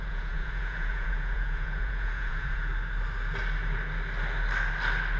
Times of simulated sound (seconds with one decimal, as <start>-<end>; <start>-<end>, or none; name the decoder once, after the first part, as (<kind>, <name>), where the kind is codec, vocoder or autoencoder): 0.0-2.7 (vocoder, Vocos)